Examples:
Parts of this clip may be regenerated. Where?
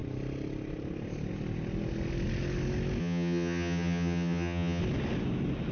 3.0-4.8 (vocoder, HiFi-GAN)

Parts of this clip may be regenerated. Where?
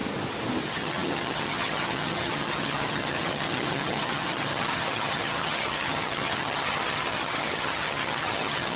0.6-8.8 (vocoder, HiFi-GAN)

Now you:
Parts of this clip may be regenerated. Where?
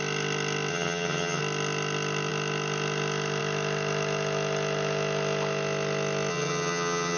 0.7-1.4 (vocoder, HiFi-GAN); 6.3-7.2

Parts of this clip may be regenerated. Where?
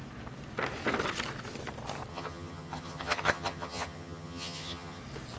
2.1-5.0 (vocoder, HiFi-GAN)